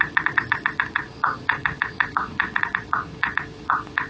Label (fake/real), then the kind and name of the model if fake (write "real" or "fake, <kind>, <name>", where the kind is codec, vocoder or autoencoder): fake, vocoder, Vocos